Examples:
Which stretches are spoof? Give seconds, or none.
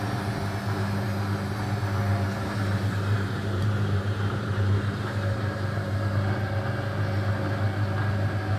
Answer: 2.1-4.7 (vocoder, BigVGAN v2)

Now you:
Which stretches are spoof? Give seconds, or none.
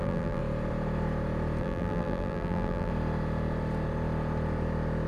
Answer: 0.0-0.4 (vocoder, BigVGAN v2); 1.6-2.9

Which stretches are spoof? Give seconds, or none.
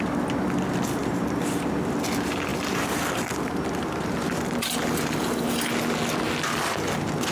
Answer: 2.5-3.2 (vocoder, BigVGAN v2)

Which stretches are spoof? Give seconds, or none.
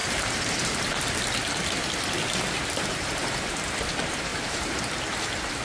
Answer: 0.0-0.9 (vocoder, BigVGAN v2); 4.3-4.8